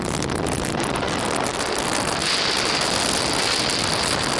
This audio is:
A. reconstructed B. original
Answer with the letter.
B